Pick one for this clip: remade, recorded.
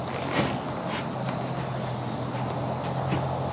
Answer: recorded